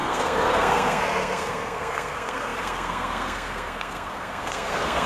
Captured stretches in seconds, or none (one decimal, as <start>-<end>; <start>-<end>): none